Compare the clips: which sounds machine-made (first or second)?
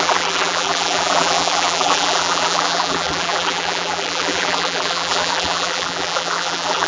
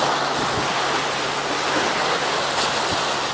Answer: first